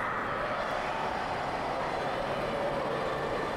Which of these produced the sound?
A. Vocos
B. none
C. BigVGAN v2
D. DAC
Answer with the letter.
B